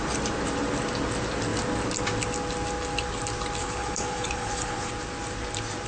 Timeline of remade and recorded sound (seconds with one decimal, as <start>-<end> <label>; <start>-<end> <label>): 0.0-3.6 recorded; 3.6-4.9 remade; 4.9-5.9 recorded